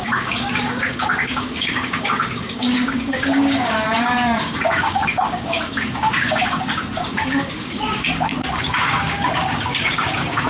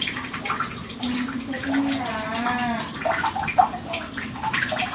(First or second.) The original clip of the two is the second